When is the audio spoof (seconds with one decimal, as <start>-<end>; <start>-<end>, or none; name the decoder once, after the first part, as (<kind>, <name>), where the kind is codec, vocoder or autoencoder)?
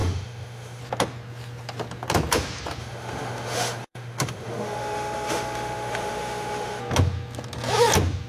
0.0-0.8 (autoencoder, DAC-VAE); 2.8-6.8